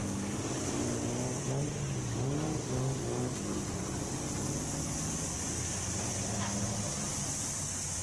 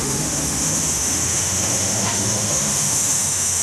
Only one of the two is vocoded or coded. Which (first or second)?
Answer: second